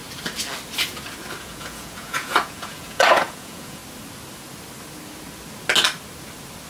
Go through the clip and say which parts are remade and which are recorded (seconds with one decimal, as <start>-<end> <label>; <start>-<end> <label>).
0.0-1.4 recorded; 1.4-3.8 remade; 3.8-6.7 recorded